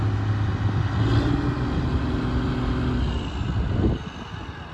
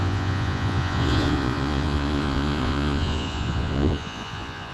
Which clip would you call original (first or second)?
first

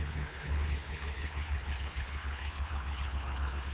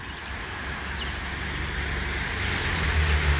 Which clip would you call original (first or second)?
second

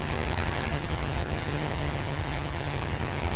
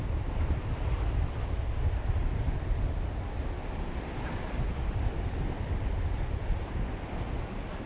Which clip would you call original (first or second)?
second